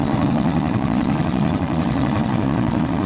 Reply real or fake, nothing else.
fake